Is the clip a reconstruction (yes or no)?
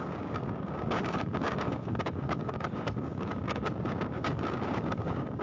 yes